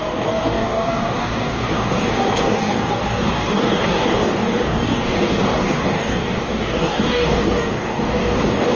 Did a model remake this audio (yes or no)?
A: yes